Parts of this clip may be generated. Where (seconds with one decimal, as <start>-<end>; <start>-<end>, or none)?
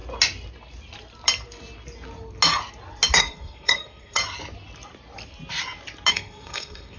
3.2-4.2; 6.1-7.0